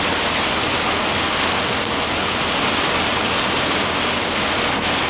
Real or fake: real